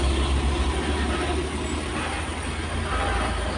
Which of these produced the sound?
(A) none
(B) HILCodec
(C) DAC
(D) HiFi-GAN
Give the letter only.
A